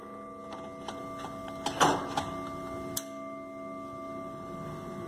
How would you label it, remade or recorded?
recorded